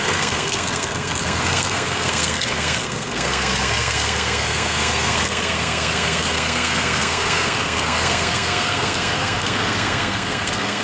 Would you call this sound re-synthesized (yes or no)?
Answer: yes